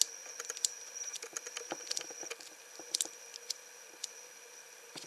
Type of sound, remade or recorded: recorded